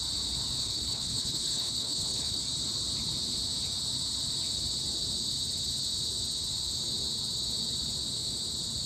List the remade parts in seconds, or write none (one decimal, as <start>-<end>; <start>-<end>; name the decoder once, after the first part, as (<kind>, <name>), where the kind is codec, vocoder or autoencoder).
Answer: 0.6-2.4 (codec, HILCodec)